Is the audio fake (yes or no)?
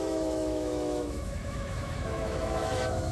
yes